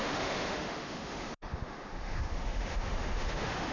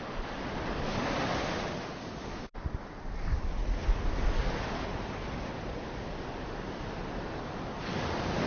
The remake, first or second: first